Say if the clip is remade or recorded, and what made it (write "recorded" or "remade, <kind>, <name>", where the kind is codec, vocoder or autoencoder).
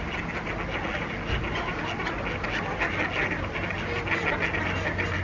recorded